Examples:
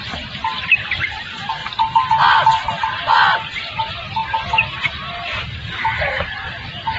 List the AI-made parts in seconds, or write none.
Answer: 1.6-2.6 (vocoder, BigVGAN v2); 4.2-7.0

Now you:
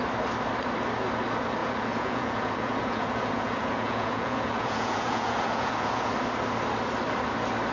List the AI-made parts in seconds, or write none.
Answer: 1.6-6.1 (vocoder, Vocos)

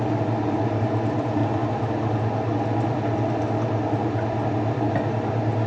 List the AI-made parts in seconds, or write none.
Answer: 0.0-1.4 (vocoder, BigVGAN v2); 4.8-5.7